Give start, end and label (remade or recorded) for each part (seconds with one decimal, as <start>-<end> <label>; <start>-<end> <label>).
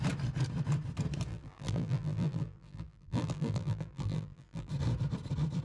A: 0.0-1.3 recorded; 1.3-4.7 remade; 4.7-5.6 recorded